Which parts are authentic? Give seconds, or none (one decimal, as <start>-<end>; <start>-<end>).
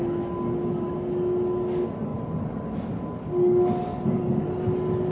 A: 0.0-2.1; 2.9-3.9; 4.5-5.1